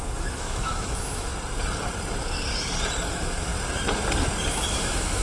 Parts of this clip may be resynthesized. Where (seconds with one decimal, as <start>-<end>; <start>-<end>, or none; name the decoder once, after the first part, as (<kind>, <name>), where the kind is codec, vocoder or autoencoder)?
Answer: 0.0-1.3 (autoencoder, DAC-VAE); 3.1-3.5; 4.5-5.2